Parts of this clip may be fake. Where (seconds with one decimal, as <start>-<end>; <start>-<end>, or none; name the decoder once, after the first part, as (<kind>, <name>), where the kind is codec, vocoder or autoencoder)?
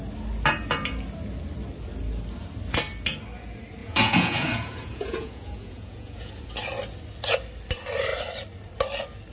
3.8-6.4 (vocoder, Vocos)